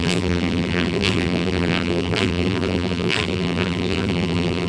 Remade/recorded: remade